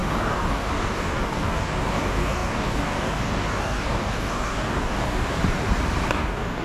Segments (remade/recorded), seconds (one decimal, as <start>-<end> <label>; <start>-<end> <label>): 0.0-5.4 remade; 5.4-6.1 recorded; 6.1-6.6 remade